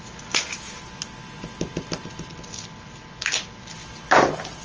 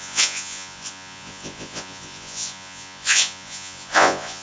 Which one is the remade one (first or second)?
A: second